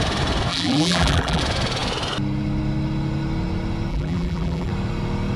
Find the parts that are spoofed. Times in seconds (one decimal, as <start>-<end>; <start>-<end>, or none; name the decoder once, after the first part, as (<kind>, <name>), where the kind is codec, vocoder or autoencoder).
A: 0.5-1.4 (vocoder, BigVGAN v2); 3.9-4.7